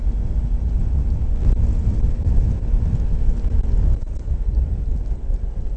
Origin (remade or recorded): recorded